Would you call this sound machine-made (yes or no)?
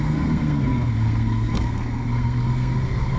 yes